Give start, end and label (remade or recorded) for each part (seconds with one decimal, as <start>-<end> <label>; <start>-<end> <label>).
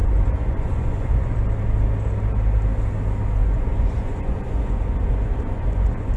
0.0-1.3 remade; 1.3-3.4 recorded; 3.4-6.2 remade